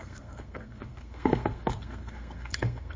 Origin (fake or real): fake